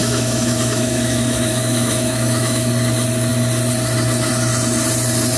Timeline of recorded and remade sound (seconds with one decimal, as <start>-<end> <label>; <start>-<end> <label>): 0.0-2.7 remade; 2.7-5.4 recorded